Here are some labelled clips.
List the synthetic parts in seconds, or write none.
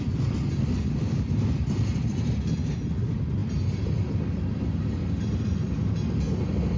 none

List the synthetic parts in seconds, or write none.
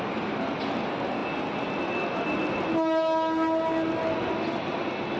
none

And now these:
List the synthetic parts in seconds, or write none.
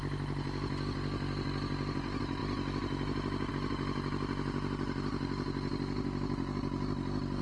none